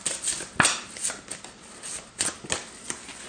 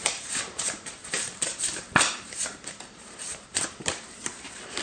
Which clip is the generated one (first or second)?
second